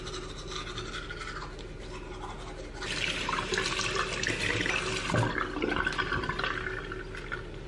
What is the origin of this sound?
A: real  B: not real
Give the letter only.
A